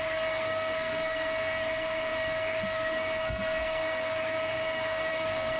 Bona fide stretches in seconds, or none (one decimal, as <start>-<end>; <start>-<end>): none

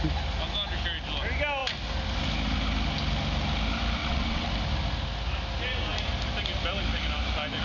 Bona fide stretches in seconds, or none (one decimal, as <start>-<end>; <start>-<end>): 0.0-4.0; 4.5-7.6